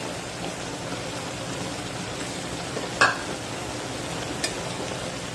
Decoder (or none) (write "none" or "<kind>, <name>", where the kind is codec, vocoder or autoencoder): none